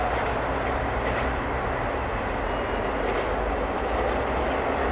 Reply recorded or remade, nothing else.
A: recorded